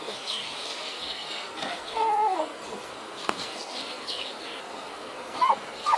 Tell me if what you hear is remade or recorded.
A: remade